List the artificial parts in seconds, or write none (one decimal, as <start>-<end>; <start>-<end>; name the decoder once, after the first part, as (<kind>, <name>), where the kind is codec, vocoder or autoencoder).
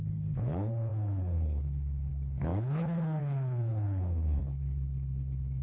0.0-5.6 (codec, HILCodec)